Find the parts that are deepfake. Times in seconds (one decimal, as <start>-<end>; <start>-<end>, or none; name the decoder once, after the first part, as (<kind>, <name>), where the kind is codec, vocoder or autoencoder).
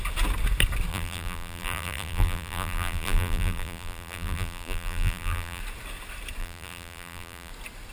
0.9-5.6 (vocoder, BigVGAN v2); 6.4-7.5